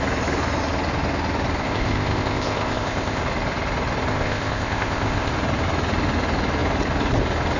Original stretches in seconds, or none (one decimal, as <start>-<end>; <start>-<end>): 0.0-1.6; 3.2-4.1; 5.3-7.6